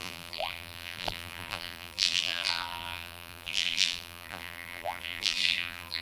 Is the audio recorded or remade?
remade